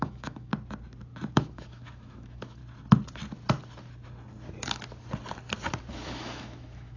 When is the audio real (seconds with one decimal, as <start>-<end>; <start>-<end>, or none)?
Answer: 0.5-1.3; 2.6-5.9